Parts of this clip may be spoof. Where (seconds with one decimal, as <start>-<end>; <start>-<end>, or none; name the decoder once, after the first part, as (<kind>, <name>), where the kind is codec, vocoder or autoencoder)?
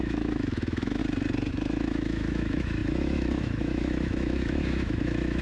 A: 0.0-1.0 (autoencoder, DAC-VAE); 1.5-5.4